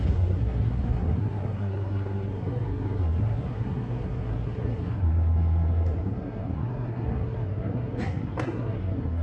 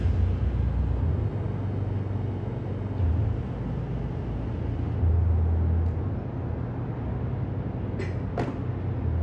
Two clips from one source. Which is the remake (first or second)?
first